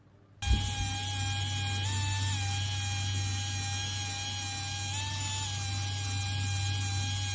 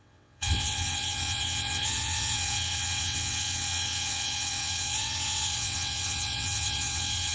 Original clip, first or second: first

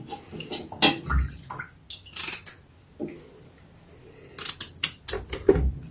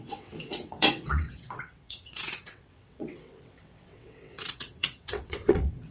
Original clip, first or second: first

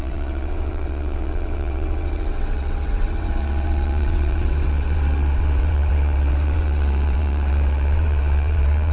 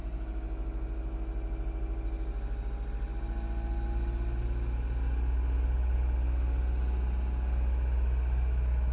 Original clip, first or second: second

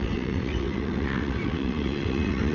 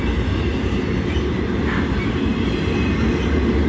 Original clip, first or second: second